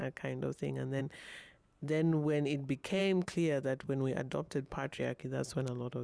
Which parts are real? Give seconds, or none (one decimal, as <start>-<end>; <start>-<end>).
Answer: 0.0-3.0; 5.0-6.0